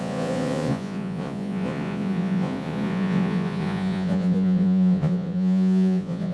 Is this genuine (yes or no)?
no